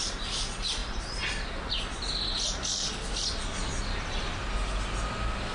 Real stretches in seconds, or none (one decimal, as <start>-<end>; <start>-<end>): 0.0-5.5